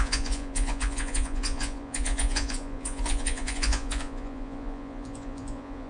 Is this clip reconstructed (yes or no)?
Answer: yes